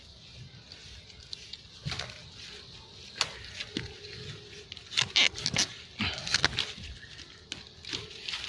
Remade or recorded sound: recorded